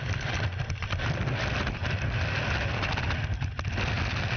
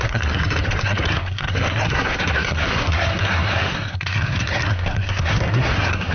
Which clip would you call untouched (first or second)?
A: first